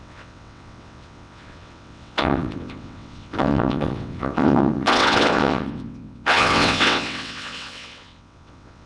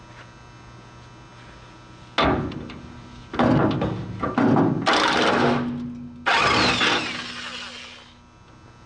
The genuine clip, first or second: second